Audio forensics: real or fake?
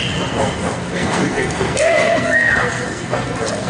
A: fake